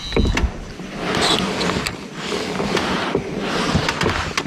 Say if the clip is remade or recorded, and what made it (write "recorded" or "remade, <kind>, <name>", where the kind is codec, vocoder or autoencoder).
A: recorded